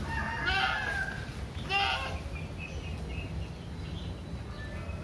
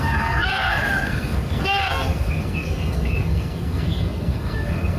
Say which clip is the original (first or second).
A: first